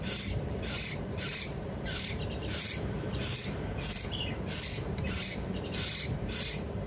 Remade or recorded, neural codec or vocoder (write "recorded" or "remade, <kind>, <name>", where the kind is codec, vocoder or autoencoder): remade, vocoder, BigVGAN v2